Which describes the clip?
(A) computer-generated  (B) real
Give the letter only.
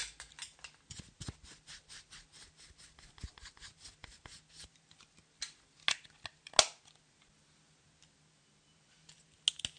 B